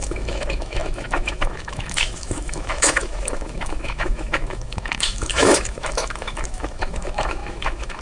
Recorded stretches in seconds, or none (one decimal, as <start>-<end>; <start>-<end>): none